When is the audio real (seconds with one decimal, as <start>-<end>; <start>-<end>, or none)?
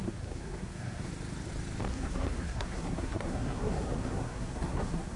1.1-1.9